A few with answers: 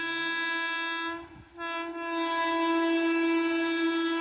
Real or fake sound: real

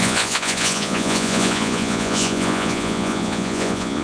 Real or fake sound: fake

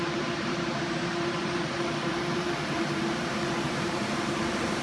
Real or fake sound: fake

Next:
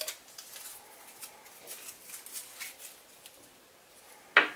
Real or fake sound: real